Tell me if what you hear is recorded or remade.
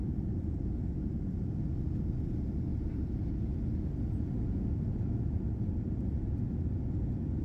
recorded